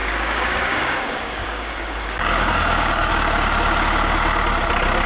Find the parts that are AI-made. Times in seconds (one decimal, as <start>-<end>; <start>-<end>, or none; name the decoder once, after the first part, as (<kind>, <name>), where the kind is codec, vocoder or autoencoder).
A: 0.0-3.1 (codec, DAC)